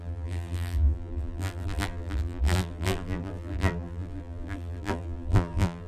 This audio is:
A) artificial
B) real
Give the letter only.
A